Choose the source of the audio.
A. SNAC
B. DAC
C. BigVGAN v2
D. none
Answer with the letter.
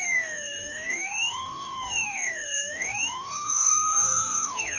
B